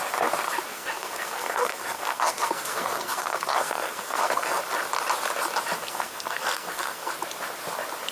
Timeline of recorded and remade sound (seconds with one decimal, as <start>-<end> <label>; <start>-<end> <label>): 0.0-0.7 recorded; 0.7-4.6 remade; 4.6-5.8 recorded; 5.8-7.1 remade; 7.1-8.1 recorded